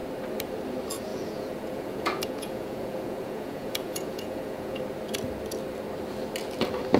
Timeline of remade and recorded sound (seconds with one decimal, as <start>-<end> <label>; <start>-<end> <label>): 0.0-1.1 recorded; 1.1-4.8 remade; 4.8-7.0 recorded